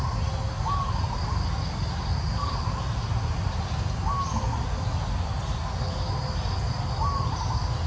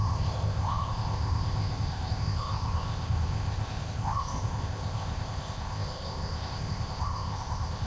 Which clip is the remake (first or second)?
second